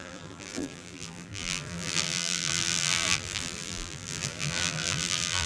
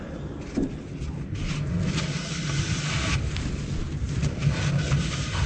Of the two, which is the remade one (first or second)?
first